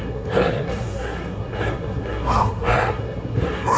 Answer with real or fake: fake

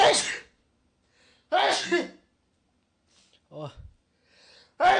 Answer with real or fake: real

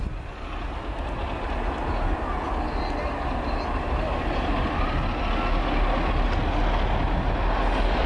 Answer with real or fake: real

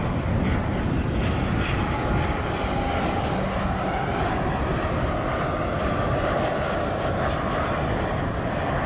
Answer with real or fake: real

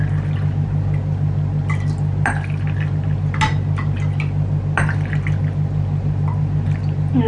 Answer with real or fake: real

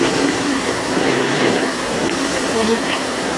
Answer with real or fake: fake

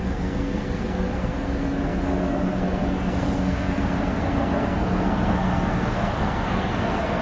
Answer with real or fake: fake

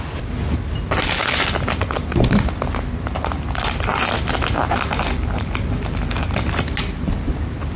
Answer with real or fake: real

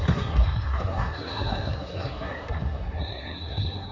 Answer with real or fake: fake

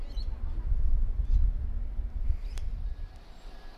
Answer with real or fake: real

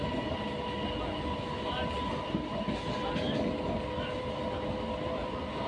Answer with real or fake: real